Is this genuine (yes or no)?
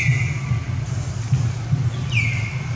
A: yes